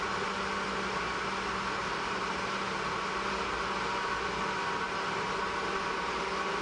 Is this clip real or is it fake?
real